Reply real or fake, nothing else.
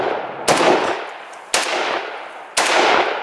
real